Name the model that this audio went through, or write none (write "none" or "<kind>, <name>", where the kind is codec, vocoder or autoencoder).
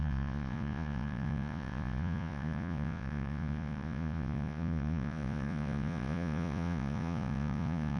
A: vocoder, Vocos